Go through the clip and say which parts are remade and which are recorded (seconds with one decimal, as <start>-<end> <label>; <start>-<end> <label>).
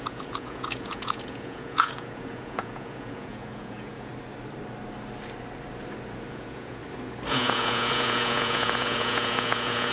0.0-4.1 remade; 4.1-6.3 recorded; 6.3-6.8 remade; 6.8-7.3 recorded; 7.3-9.9 remade